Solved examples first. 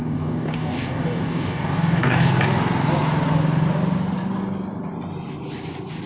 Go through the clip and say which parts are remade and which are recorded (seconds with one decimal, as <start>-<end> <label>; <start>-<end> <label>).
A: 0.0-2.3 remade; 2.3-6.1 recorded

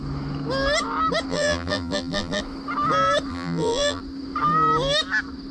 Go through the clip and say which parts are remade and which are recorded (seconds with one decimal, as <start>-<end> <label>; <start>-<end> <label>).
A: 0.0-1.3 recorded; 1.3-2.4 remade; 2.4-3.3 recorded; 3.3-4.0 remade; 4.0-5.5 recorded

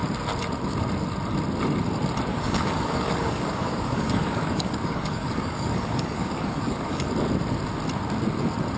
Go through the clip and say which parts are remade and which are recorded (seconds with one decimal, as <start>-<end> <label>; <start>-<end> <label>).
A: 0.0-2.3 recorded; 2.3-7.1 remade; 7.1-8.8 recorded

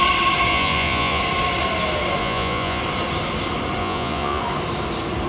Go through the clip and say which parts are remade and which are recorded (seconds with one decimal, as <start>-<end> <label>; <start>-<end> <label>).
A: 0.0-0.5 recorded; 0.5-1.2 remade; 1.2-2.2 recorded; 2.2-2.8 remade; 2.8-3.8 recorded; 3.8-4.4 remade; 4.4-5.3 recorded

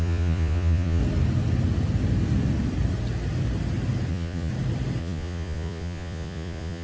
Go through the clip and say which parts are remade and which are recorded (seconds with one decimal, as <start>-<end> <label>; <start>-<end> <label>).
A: 0.0-1.0 remade; 1.0-4.1 recorded; 4.1-4.5 remade; 4.5-5.0 recorded; 5.0-6.8 remade

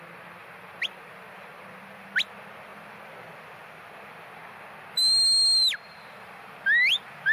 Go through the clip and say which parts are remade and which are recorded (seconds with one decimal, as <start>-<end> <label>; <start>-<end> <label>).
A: 0.0-7.3 recorded

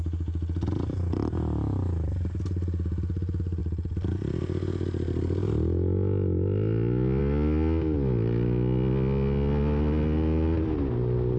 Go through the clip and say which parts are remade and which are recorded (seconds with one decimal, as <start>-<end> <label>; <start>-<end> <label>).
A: 0.0-11.4 recorded

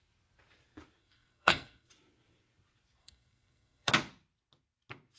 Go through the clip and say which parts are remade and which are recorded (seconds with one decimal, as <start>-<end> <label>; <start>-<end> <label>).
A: 0.0-1.0 recorded; 1.0-1.9 remade; 1.9-3.0 recorded; 3.0-3.9 remade; 3.9-5.2 recorded